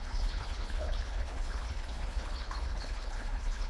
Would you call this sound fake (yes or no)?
yes